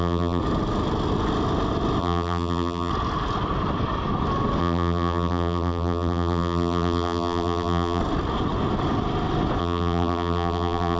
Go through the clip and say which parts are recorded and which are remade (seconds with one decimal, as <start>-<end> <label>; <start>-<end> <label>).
0.0-0.4 remade; 0.4-2.0 recorded; 2.0-2.9 remade; 2.9-4.6 recorded; 4.6-8.0 remade; 8.0-9.6 recorded; 9.6-11.0 remade